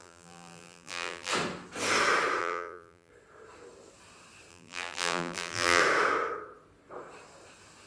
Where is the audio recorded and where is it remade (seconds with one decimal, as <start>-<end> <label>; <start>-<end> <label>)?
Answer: 0.0-1.3 remade; 1.3-2.4 recorded; 2.4-3.1 remade; 3.1-4.5 recorded; 4.5-5.8 remade; 5.8-7.9 recorded